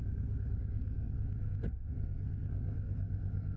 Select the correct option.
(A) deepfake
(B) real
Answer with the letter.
A